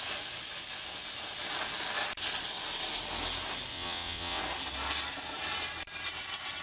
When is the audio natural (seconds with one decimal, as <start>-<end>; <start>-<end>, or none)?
0.0-3.7; 4.4-6.6